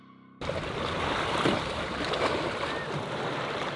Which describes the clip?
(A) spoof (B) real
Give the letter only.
B